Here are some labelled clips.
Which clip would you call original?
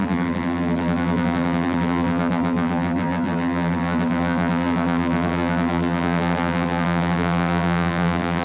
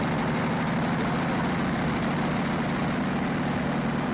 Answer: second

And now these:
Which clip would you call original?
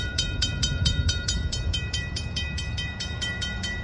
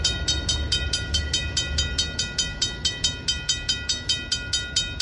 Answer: second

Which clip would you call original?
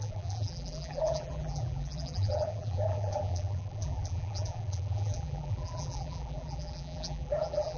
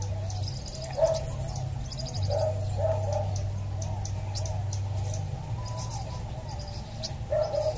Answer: second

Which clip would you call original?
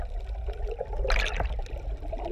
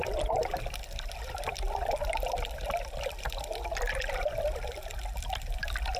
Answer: first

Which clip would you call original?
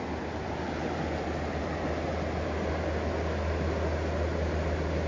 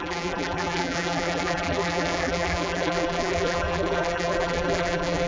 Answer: first